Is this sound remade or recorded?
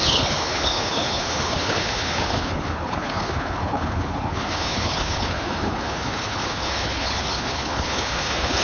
remade